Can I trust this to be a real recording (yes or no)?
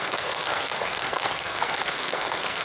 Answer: no